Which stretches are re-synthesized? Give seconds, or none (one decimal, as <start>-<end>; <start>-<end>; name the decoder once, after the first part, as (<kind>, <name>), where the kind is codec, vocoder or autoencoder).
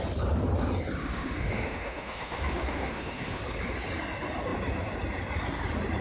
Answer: 1.0-3.4 (autoencoder, DAC-VAE)